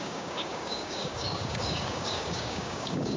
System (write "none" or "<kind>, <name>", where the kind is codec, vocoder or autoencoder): codec, DAC